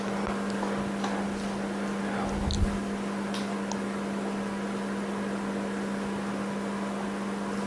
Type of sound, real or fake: real